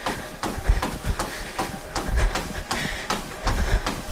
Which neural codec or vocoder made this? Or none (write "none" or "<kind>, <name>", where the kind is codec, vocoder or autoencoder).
none